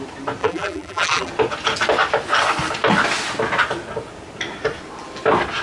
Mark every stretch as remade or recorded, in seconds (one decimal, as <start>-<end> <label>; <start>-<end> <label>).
0.0-0.4 recorded; 0.4-1.3 remade; 1.3-5.6 recorded